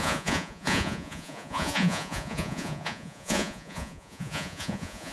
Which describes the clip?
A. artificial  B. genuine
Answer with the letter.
A